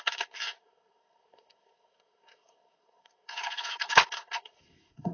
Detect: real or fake fake